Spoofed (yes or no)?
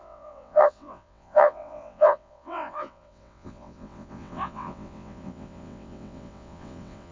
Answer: yes